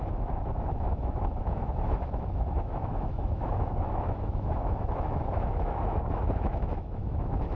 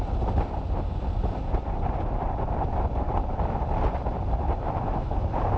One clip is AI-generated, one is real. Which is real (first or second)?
second